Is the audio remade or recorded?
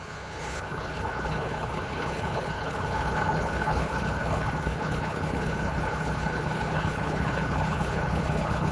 remade